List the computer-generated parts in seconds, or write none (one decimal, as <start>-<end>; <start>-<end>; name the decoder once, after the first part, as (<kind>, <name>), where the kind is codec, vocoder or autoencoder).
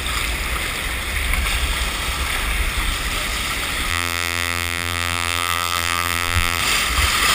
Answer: 3.9-6.6 (vocoder, BigVGAN v2)